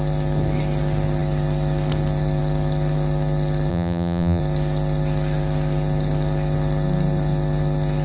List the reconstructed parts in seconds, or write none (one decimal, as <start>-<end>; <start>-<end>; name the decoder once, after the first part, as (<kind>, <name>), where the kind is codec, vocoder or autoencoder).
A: 3.7-4.4 (vocoder, BigVGAN v2)